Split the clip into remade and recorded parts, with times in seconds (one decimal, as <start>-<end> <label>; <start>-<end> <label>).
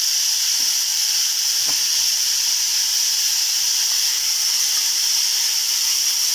0.0-2.9 recorded; 2.9-6.3 remade